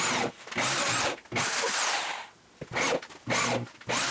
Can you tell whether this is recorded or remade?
recorded